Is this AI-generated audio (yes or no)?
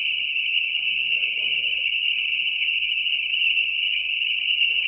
yes